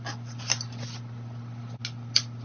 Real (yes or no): yes